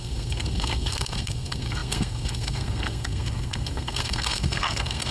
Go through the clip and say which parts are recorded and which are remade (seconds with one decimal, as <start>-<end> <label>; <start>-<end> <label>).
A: 0.0-5.1 remade